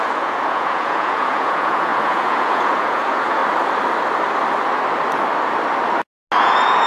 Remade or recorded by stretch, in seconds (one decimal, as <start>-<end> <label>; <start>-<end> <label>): 0.0-3.4 remade; 3.4-6.4 recorded; 6.4-6.9 remade